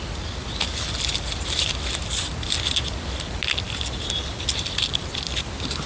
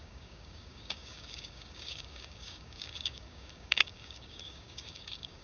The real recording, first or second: first